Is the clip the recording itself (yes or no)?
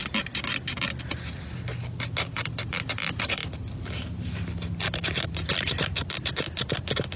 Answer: yes